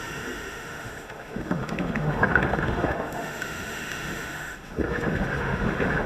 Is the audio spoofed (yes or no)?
yes